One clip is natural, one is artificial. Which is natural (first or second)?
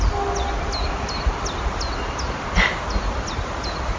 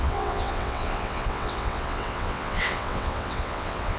first